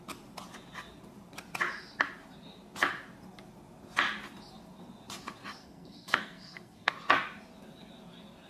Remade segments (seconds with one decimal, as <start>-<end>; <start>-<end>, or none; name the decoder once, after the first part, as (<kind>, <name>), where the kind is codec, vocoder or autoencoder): 5.6-6.9 (codec, SNAC)